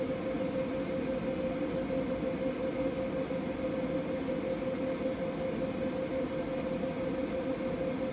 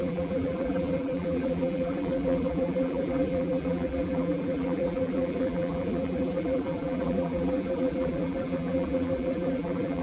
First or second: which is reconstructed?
second